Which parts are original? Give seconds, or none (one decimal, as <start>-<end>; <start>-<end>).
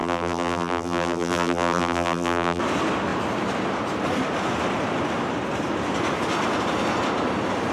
2.6-7.7